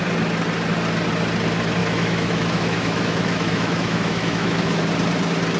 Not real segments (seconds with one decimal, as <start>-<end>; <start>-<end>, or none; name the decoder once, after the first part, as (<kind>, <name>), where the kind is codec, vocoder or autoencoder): 1.8-4.8 (autoencoder, DAC-VAE)